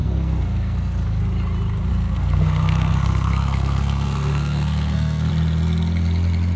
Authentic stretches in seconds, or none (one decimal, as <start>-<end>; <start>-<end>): 1.2-1.9; 5.3-6.6